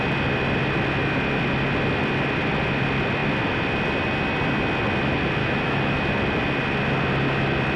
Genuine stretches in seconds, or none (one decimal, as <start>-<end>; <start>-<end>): 0.0-5.4; 6.1-7.8